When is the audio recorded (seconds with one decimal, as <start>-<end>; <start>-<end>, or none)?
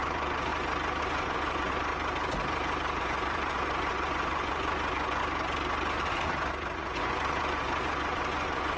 0.5-1.0; 1.9-3.0; 5.2-6.5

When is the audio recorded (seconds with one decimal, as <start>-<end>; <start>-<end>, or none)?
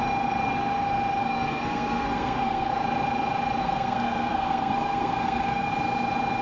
0.0-1.2; 2.7-3.6; 5.7-6.4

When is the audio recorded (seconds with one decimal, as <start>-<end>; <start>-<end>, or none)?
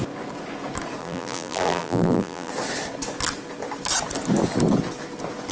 0.0-1.0; 2.5-5.5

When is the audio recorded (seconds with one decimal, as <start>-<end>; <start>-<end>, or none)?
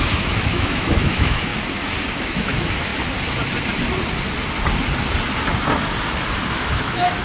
1.5-2.2; 2.9-6.5